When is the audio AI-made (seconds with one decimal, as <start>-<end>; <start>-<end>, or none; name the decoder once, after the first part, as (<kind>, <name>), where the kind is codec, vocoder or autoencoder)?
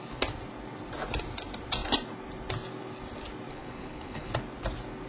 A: 3.5-4.3 (codec, HILCodec)